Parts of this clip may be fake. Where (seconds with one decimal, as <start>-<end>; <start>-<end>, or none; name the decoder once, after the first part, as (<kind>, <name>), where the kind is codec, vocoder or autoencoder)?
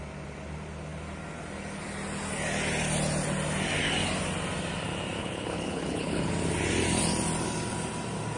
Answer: 5.2-6.3 (codec, HILCodec)